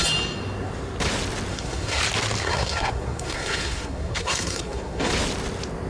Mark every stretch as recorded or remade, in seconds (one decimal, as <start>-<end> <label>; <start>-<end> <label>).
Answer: 0.0-1.5 recorded; 1.5-2.0 remade; 2.0-2.4 recorded; 2.4-5.1 remade; 5.1-5.9 recorded